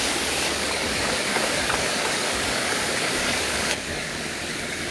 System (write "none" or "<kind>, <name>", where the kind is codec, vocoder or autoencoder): codec, DAC